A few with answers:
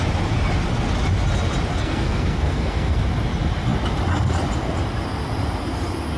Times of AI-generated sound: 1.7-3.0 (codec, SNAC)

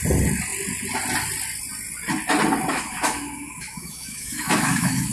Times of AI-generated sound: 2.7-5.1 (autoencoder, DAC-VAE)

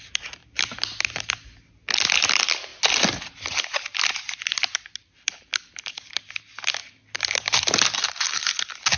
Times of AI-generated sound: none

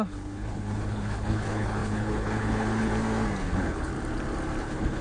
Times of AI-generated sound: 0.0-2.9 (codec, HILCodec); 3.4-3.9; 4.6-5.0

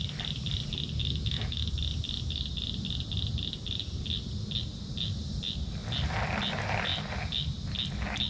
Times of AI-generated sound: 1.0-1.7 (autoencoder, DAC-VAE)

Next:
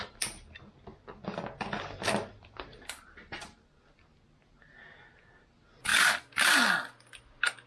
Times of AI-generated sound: none

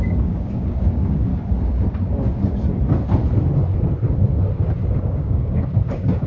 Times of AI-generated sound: 0.0-1.3 (codec, DAC); 5.0-6.3

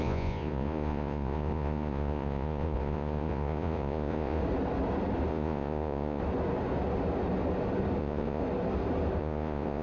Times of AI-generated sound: 0.0-4.4 (vocoder, Vocos); 5.3-6.2; 8.0-8.4; 9.2-9.8